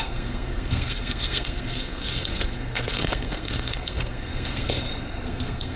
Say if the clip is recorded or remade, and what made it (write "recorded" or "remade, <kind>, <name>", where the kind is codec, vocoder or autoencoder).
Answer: remade, codec, SNAC